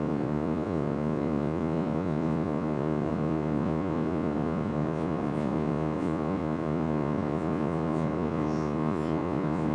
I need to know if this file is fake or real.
fake